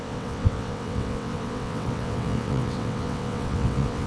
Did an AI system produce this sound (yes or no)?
yes